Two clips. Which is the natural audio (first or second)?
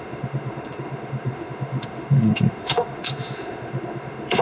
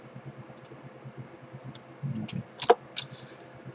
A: second